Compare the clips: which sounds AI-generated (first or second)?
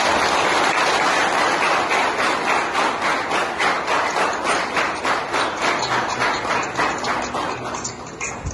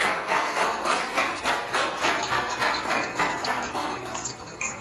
second